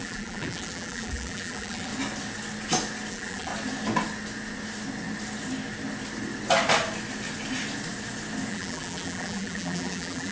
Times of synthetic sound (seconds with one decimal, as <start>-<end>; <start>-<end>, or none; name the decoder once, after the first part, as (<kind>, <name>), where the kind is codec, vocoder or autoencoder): 0.0-1.9 (vocoder, BigVGAN v2); 3.1-3.5; 8.5-10.3